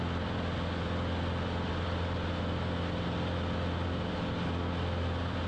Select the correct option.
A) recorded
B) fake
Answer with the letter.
A